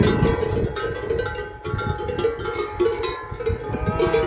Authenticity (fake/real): real